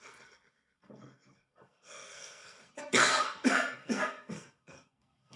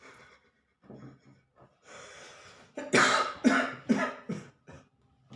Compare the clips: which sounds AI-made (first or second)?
first